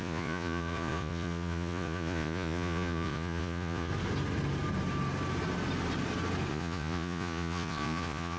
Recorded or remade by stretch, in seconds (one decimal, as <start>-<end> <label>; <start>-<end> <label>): 0.0-3.9 remade; 3.9-6.5 recorded; 6.5-8.4 remade